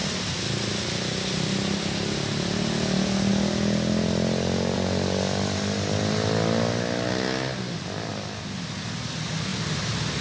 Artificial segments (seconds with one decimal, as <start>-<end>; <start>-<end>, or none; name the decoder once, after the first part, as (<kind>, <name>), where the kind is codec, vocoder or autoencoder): none